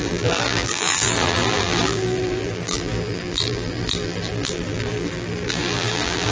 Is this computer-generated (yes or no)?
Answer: yes